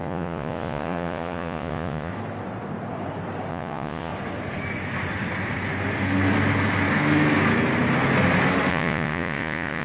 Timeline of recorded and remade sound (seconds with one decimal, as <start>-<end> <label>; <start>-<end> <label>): 0.0-2.1 remade; 2.1-3.5 recorded; 3.5-4.1 remade; 4.1-8.7 recorded; 8.7-9.8 remade